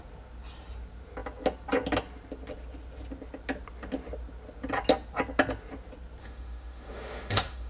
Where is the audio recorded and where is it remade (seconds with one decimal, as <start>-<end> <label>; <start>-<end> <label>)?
0.0-6.2 recorded; 6.2-7.7 remade